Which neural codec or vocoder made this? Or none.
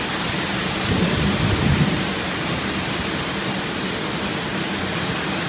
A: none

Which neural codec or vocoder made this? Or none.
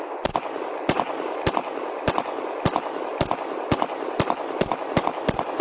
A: none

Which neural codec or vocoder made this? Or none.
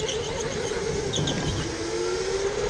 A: none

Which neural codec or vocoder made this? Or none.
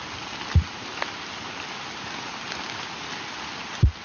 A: none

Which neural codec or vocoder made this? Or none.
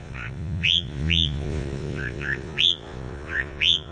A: vocoder, Vocos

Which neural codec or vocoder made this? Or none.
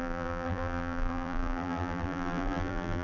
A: vocoder, BigVGAN v2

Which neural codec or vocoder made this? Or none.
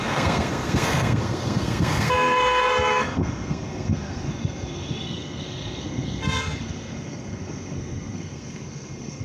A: codec, SNAC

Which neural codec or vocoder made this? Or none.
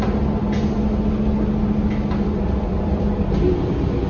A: none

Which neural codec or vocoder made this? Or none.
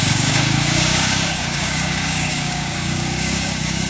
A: codec, DAC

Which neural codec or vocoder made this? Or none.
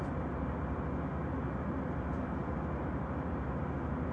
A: none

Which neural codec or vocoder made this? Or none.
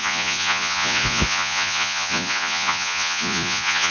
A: vocoder, Vocos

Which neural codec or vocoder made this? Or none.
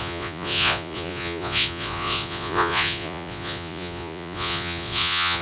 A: vocoder, Vocos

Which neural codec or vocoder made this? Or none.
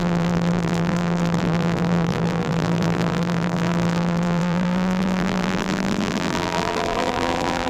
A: vocoder, BigVGAN v2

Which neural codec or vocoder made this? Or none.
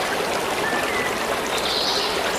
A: none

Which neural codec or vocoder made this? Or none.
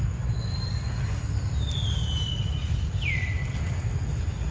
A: none